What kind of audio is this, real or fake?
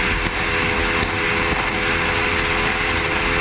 real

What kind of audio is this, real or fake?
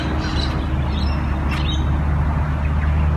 real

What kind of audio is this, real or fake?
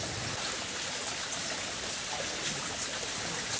real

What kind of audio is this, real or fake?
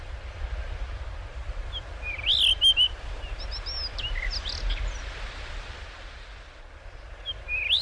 real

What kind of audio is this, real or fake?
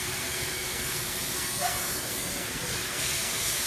fake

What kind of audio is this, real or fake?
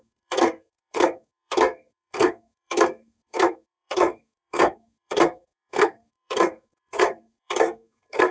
fake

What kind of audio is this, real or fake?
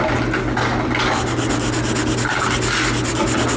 real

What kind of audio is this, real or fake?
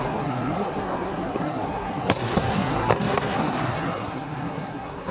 fake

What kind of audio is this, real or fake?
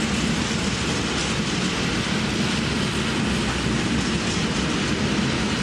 real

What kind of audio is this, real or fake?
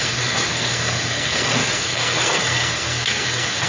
fake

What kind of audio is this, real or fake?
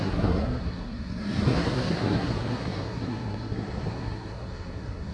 fake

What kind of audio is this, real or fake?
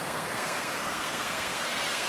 fake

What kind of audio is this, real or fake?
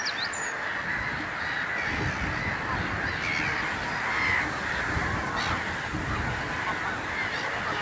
real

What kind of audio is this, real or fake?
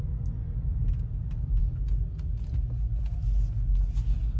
real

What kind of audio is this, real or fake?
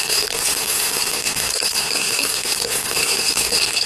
fake